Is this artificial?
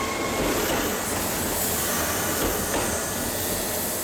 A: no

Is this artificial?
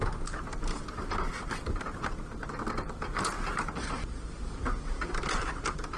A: no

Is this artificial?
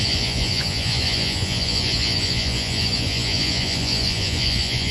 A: yes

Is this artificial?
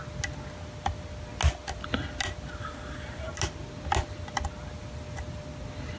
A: no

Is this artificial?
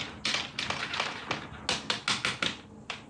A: no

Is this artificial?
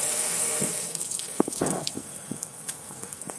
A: yes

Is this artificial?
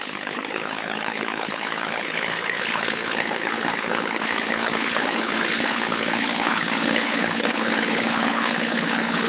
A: yes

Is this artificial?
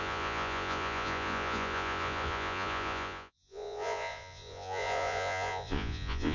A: yes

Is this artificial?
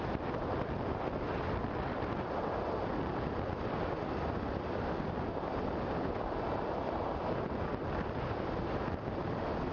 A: no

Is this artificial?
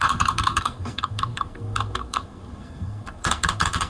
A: yes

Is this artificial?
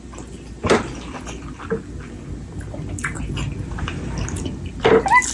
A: no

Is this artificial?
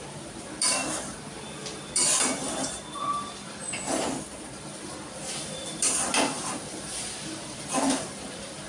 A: yes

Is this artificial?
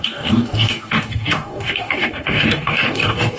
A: yes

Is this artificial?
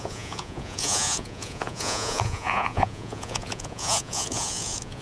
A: yes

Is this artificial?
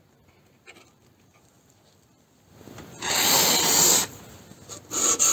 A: no